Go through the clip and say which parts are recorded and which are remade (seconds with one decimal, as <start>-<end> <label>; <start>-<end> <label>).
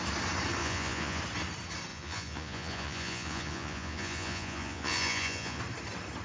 0.0-0.6 recorded; 0.6-1.2 remade; 1.2-1.9 recorded; 1.9-5.6 remade; 5.6-6.2 recorded